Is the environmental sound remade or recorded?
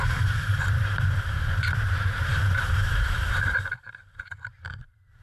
remade